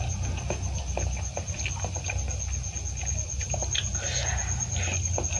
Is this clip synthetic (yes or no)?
no